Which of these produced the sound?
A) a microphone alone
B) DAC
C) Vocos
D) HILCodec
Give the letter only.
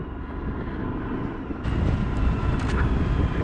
A